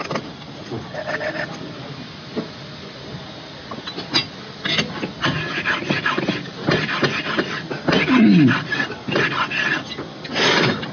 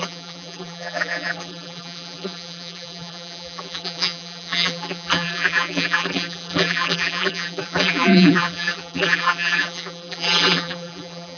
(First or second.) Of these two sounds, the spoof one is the second